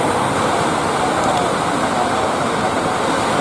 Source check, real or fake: real